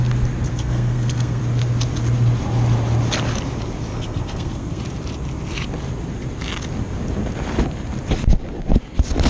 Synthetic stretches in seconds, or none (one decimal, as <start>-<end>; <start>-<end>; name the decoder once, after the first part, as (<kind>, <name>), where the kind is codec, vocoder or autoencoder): 0.5-1.4 (codec, SNAC); 3.9-4.8